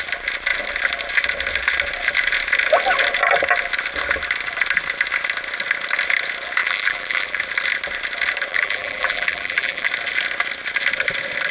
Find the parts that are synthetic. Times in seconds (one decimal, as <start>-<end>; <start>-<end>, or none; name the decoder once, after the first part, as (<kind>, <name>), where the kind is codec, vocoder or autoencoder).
6.6-7.4 (vocoder, BigVGAN v2); 8.5-9.9

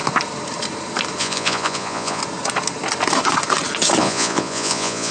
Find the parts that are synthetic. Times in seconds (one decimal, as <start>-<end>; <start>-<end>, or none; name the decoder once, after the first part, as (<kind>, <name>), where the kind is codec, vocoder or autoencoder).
1.2-2.2 (vocoder, Vocos); 4.0-5.1

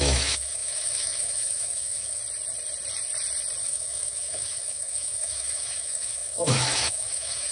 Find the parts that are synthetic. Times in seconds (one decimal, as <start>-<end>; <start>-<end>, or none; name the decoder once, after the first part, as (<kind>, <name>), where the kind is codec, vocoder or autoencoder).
0.0-2.2 (autoencoder, DAC-VAE); 3.6-7.5

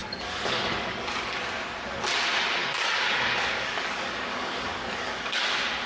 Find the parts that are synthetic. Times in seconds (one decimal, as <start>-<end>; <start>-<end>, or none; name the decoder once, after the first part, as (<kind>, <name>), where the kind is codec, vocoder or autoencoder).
0.0-1.4 (codec, DAC); 2.6-5.5

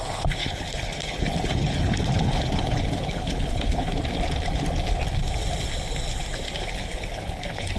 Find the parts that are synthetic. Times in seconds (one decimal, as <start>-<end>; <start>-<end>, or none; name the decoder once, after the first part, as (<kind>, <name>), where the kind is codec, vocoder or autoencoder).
0.0-3.9 (codec, HILCodec); 6.6-7.8

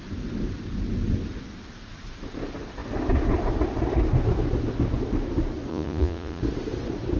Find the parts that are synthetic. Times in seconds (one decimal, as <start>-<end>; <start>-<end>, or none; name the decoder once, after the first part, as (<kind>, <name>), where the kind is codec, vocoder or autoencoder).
5.7-6.4 (vocoder, Vocos)

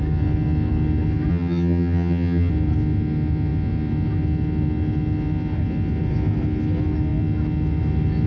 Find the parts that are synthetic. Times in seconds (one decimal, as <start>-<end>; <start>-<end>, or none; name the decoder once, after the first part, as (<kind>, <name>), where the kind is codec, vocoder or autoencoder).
1.3-2.5 (vocoder, HiFi-GAN)